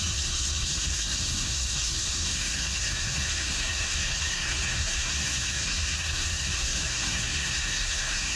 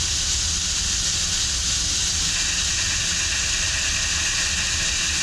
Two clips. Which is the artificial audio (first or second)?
first